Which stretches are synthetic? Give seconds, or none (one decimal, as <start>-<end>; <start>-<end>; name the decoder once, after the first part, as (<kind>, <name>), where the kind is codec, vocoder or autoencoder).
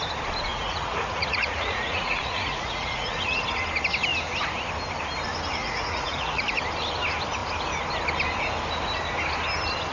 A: 0.5-3.4 (vocoder, Vocos); 5.6-6.6